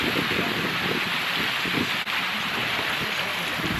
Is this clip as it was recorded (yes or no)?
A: yes